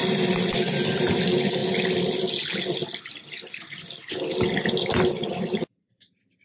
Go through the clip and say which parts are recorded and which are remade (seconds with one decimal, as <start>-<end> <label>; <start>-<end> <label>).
0.0-6.4 recorded